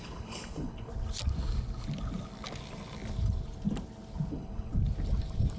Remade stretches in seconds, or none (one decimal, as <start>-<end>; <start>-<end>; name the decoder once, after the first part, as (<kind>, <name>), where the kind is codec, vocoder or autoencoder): 0.0-0.9 (codec, HILCodec); 4.3-4.7